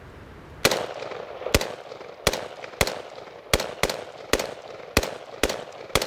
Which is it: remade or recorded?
recorded